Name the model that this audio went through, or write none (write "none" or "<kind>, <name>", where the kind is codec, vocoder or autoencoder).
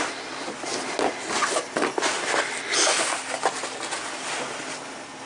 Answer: none